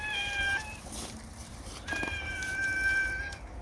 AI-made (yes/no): yes